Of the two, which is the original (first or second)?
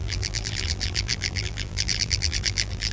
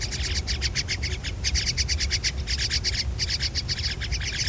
second